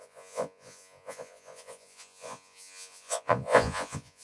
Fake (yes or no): yes